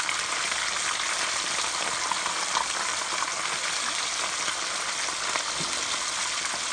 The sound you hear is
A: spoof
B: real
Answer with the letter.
B